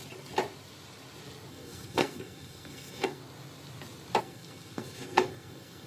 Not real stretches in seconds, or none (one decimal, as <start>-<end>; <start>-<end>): 1.5-3.2; 4.2-5.9